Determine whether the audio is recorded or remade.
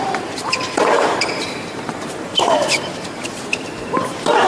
remade